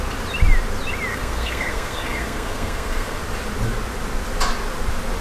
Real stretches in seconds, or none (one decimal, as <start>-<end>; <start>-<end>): 0.0-1.1; 3.2-5.2